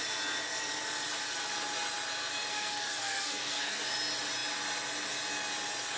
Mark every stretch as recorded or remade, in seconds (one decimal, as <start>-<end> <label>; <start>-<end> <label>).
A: 0.0-2.5 recorded; 2.5-3.9 remade; 3.9-6.0 recorded

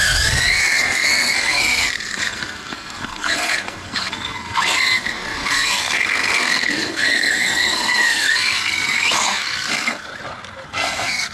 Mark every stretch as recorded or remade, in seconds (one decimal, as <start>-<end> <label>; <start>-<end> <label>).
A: 0.0-10.1 remade; 10.1-10.7 recorded; 10.7-11.3 remade

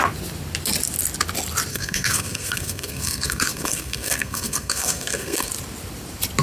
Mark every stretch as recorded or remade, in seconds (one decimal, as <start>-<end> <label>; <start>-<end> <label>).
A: 0.0-1.7 recorded; 1.7-5.5 remade; 5.5-6.4 recorded

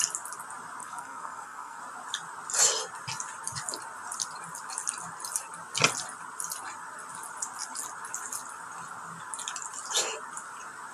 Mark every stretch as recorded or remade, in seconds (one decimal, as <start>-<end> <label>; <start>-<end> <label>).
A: 0.0-0.8 recorded; 0.8-1.8 remade; 1.8-10.9 recorded

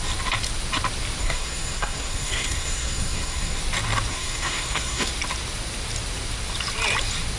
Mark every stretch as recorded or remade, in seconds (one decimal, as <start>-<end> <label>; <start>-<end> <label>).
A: 0.0-1.2 recorded; 1.2-3.6 remade; 3.6-4.1 recorded; 4.1-5.1 remade; 5.1-7.4 recorded